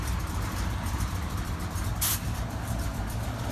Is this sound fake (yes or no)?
yes